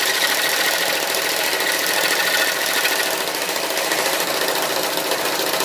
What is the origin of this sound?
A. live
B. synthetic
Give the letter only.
A